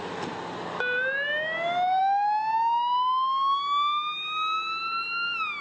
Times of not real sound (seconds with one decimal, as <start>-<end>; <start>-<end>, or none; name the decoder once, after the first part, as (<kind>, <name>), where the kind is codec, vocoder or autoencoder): none